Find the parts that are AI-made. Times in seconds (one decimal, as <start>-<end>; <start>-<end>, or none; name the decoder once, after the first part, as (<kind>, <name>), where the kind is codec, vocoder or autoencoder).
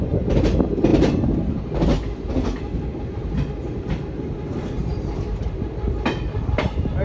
none